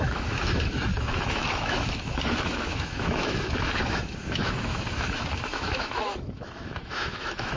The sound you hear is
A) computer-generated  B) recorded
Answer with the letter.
A